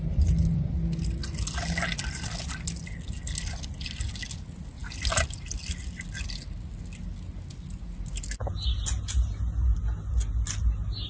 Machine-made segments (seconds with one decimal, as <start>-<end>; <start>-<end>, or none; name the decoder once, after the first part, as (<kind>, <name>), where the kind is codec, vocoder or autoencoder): none